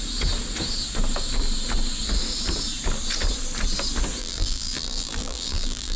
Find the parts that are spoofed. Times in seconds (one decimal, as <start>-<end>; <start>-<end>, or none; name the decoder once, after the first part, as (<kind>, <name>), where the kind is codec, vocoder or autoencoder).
4.2-6.0 (vocoder, BigVGAN v2)